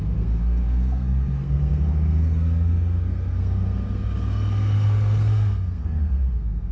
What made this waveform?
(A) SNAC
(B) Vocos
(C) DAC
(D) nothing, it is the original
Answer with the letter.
A